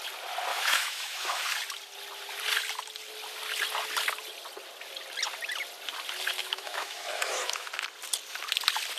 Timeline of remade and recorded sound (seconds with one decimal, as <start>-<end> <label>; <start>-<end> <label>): 0.0-0.5 recorded; 0.5-1.4 remade; 1.4-6.4 recorded; 6.4-7.7 remade; 7.7-9.0 recorded

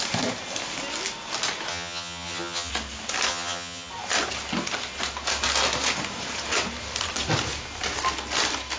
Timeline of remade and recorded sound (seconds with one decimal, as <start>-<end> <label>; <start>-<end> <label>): 0.0-1.7 recorded; 1.7-2.7 remade; 2.7-3.3 recorded; 3.3-3.9 remade; 3.9-8.8 recorded

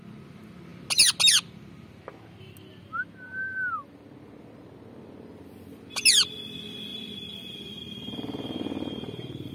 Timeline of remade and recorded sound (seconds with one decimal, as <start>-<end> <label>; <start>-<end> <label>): 0.0-6.9 recorded; 6.9-9.5 remade